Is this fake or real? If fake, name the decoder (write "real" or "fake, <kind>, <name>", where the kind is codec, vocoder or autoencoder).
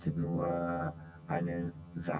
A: fake, vocoder, HiFi-GAN